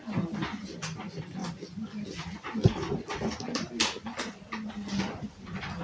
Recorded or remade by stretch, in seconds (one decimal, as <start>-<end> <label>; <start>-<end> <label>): 0.0-5.8 recorded